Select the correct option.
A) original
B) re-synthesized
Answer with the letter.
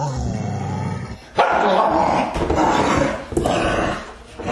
A